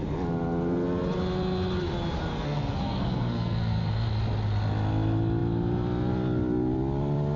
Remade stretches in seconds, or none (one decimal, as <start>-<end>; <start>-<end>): 2.3-3.9